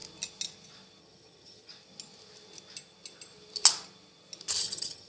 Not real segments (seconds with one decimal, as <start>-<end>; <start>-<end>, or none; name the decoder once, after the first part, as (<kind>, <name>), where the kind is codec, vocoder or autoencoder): 1.0-1.7 (vocoder, HiFi-GAN); 4.6-5.1